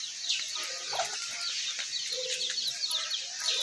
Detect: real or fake real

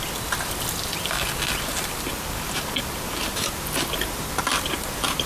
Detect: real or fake real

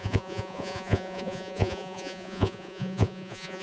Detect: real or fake fake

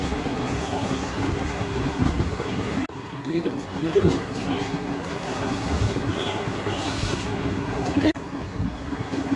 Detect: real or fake fake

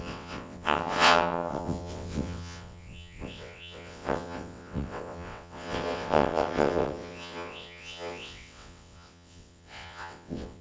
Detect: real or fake fake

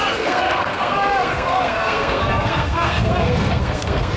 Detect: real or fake fake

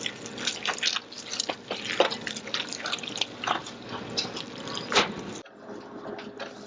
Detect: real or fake real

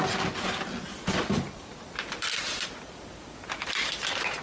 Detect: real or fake real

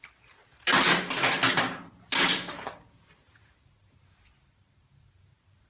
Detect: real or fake fake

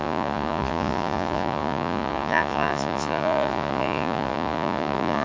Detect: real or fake fake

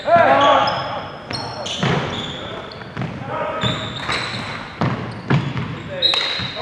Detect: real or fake real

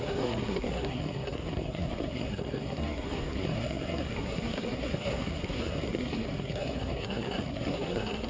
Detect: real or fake fake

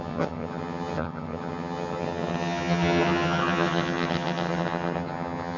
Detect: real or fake fake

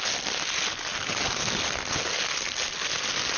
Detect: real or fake real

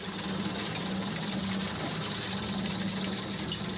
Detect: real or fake real